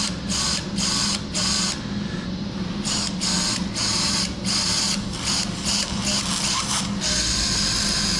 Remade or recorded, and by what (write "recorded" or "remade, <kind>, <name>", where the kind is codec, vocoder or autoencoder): recorded